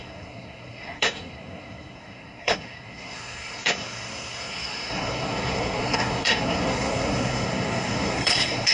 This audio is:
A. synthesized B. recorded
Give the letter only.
A